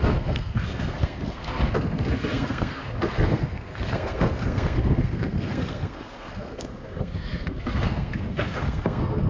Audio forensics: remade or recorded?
remade